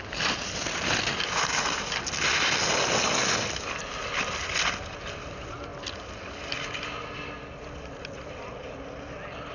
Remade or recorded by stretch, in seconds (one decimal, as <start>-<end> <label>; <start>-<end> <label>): 0.0-9.5 recorded